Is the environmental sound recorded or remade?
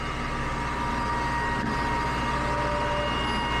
recorded